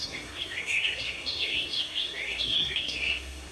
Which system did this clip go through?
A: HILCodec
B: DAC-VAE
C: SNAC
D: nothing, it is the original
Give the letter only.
C